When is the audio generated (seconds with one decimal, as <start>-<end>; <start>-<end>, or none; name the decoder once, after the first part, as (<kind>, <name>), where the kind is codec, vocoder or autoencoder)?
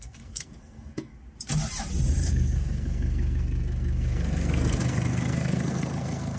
0.0-1.1 (codec, SNAC); 2.3-6.4